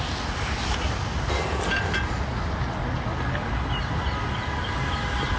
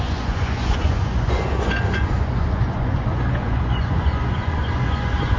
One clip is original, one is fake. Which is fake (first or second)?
second